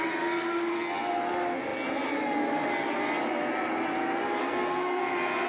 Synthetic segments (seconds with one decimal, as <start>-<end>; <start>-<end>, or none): 4.4-5.0